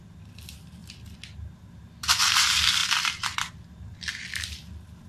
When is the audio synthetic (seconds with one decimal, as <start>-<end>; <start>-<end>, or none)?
0.0-0.8; 2.3-5.1